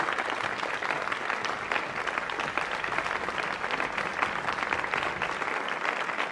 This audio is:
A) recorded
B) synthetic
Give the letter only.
A